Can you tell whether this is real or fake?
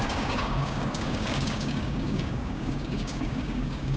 fake